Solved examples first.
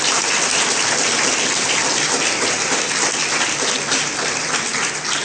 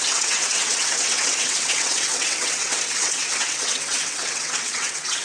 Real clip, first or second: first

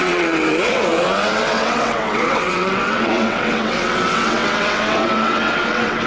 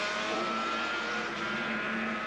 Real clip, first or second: second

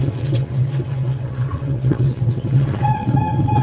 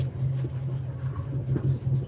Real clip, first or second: second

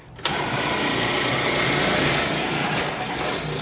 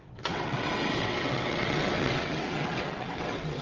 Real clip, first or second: first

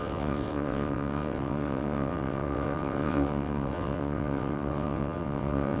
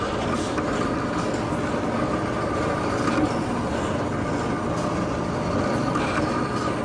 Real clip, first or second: second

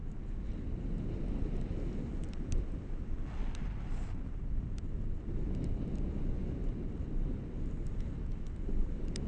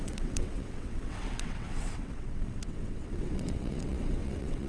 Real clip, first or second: first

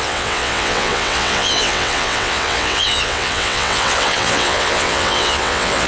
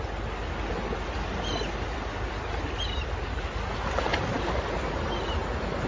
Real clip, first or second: second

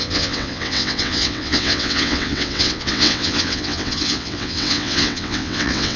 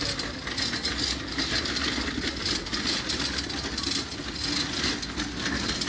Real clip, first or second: second